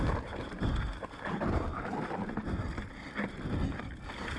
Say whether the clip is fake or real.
real